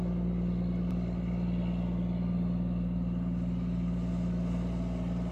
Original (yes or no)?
yes